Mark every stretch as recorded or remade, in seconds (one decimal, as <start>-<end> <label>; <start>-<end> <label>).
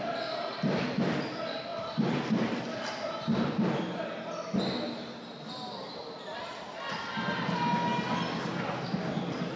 0.0-9.6 recorded